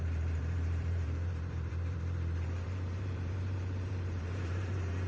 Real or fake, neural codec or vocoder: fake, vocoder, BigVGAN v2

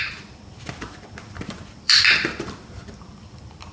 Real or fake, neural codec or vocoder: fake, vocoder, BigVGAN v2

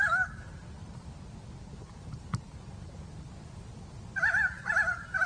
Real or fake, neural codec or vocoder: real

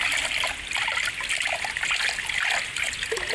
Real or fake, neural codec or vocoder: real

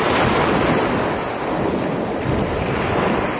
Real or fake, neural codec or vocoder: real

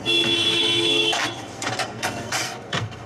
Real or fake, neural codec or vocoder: fake, codec, SNAC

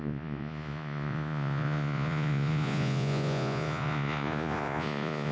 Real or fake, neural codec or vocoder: fake, vocoder, Vocos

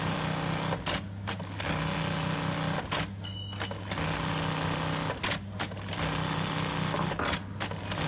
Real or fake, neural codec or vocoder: real